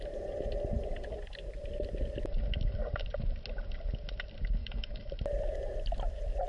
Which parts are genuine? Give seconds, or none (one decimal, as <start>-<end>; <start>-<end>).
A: 0.0-4.6; 5.1-6.5